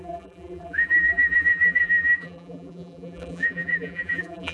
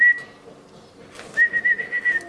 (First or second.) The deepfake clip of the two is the first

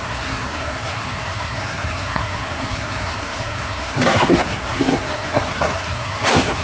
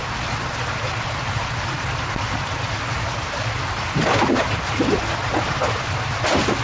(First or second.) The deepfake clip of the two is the first